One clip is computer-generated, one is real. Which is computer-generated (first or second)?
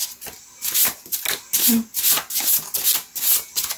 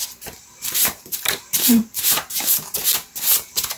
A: second